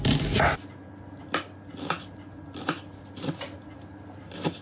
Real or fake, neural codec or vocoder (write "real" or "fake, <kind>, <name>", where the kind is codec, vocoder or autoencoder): real